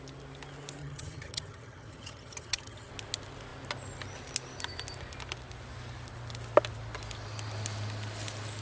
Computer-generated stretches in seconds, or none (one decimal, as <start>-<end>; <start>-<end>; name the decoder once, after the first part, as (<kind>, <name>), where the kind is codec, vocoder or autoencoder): 0.8-2.9 (vocoder, HiFi-GAN)